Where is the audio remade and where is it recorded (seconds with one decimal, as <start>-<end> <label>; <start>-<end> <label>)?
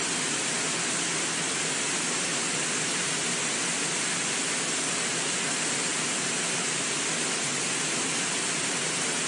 0.0-9.3 recorded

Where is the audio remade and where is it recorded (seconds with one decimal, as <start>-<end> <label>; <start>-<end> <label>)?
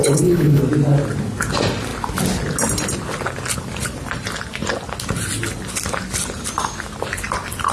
0.0-0.6 remade; 0.6-7.7 recorded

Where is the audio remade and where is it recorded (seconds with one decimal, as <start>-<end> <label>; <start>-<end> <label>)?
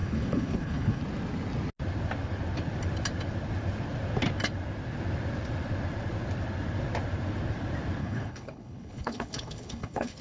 0.0-1.0 remade; 1.0-8.0 recorded; 8.0-10.2 remade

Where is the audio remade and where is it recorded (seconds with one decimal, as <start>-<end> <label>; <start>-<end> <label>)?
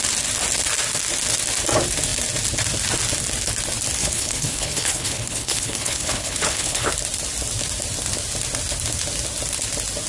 0.0-4.0 recorded; 4.0-6.9 remade; 6.9-10.1 recorded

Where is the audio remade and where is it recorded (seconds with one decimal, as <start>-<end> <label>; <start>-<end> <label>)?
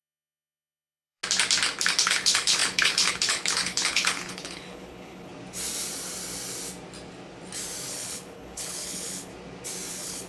0.0-1.2 remade; 1.2-2.0 recorded; 2.0-5.3 remade; 5.3-7.9 recorded; 7.9-9.3 remade; 9.3-9.9 recorded; 9.9-10.3 remade